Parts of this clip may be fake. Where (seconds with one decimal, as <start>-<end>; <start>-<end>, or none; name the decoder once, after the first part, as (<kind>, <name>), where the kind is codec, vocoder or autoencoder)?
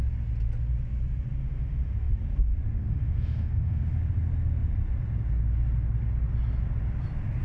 1.4-2.1 (autoencoder, DAC-VAE); 2.8-4.0